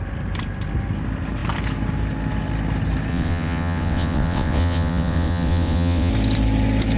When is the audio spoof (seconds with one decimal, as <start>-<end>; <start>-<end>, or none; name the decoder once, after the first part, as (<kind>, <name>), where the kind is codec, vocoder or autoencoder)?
3.1-6.1 (vocoder, WaveNeXt)